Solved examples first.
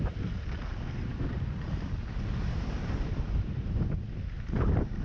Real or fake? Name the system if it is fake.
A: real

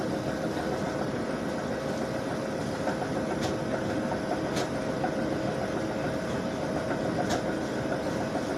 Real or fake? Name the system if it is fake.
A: real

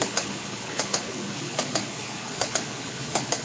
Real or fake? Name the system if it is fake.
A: fake, codec, HILCodec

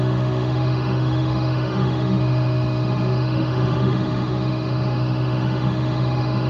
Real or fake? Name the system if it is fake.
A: fake, autoencoder, DAC-VAE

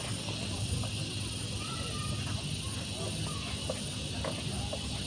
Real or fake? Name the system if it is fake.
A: real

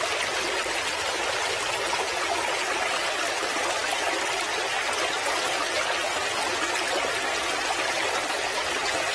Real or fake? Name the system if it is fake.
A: real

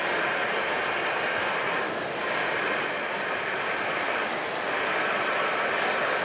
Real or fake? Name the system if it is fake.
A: real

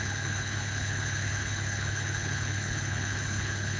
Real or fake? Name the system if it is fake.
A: fake, codec, HILCodec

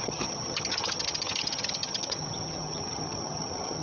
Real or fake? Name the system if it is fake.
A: fake, vocoder, HiFi-GAN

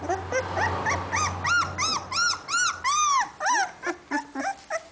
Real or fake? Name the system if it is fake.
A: real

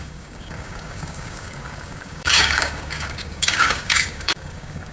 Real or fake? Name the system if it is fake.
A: fake, codec, DAC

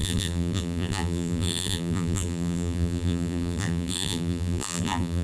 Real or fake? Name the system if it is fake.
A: fake, vocoder, BigVGAN v2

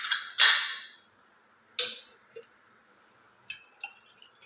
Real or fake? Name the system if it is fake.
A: real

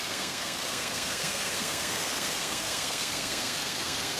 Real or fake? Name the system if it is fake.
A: fake, codec, SNAC